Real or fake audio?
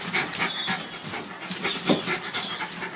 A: real